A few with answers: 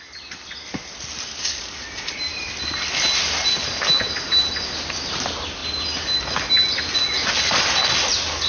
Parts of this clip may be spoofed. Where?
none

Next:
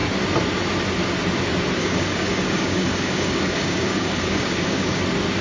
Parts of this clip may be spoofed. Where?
1.8-5.0 (codec, DAC)

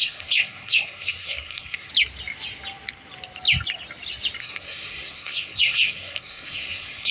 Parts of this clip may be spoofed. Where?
0.0-1.9 (codec, SNAC); 4.4-7.1

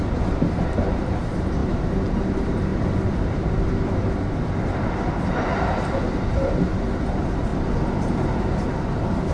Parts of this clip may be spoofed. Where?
none